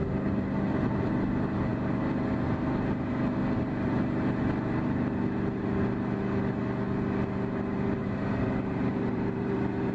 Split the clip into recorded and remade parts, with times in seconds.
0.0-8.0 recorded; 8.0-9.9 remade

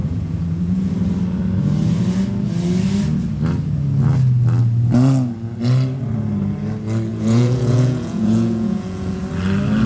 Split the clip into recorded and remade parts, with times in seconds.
0.0-0.9 remade; 0.9-7.1 recorded; 7.1-9.2 remade; 9.2-9.9 recorded

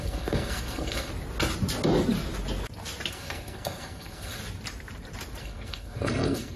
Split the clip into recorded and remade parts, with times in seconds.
0.0-1.1 remade; 1.1-3.1 recorded; 3.1-4.4 remade; 4.4-5.4 recorded; 5.4-6.6 remade